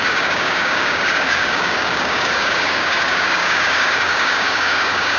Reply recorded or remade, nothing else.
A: remade